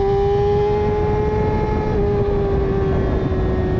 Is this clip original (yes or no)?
yes